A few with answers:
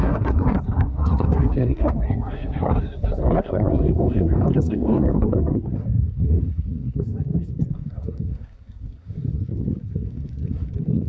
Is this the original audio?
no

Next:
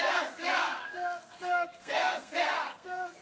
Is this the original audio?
no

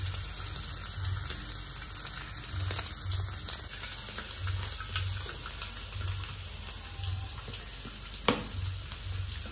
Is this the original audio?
yes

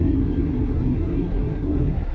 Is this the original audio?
no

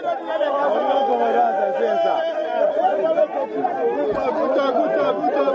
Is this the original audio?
yes